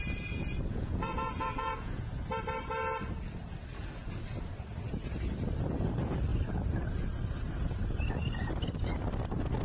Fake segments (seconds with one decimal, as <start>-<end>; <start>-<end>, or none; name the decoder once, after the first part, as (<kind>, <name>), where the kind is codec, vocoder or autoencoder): 0.7-2.2 (vocoder, Vocos)